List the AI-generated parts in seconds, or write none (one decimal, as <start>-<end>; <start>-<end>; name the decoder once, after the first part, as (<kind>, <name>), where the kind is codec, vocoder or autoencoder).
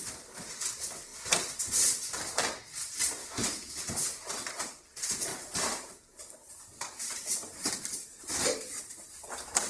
3.2-3.8 (autoencoder, DAC-VAE)